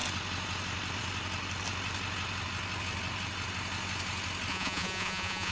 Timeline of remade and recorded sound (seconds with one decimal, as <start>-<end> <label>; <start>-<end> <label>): 0.0-4.5 recorded; 4.5-5.5 remade

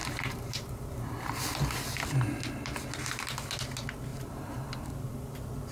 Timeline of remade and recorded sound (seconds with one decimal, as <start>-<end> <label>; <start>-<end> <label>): 0.0-1.3 remade; 1.3-4.1 recorded; 4.1-5.3 remade; 5.3-5.7 recorded